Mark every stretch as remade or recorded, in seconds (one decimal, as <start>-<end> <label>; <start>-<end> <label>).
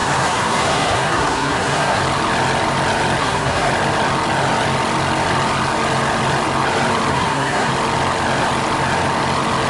0.0-2.0 remade; 2.0-3.2 recorded; 3.2-3.7 remade; 3.7-7.1 recorded; 7.1-7.7 remade; 7.7-9.7 recorded